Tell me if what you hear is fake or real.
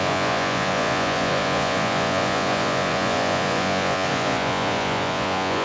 fake